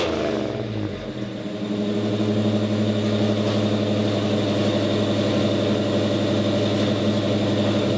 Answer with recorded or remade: recorded